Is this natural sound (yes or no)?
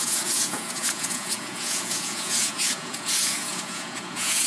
no